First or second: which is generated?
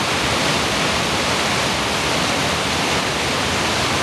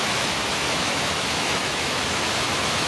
second